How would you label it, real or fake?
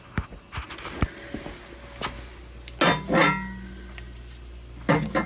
real